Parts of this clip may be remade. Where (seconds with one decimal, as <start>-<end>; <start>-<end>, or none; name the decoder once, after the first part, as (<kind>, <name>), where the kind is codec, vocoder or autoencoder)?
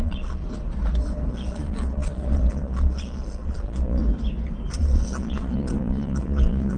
0.0-0.4 (vocoder, Vocos); 1.3-4.0; 4.8-6.8